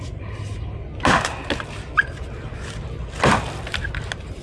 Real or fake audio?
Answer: real